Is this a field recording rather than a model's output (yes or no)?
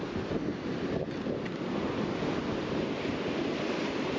yes